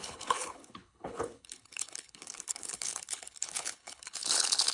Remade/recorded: remade